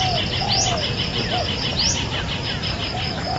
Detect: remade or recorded recorded